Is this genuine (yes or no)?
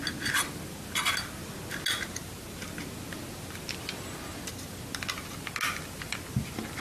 yes